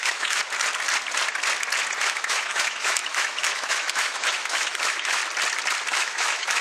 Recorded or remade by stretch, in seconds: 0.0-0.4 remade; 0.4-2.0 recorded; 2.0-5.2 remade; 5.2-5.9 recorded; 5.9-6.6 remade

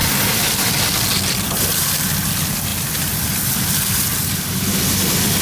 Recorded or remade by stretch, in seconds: 0.0-5.4 recorded